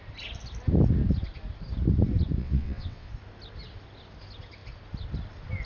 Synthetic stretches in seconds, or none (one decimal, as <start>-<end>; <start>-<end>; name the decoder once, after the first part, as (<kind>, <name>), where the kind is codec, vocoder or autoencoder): 2.4-3.1 (vocoder, WaveNeXt)